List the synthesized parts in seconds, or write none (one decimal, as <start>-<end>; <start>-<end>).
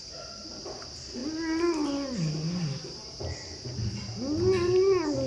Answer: none